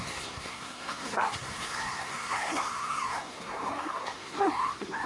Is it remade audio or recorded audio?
remade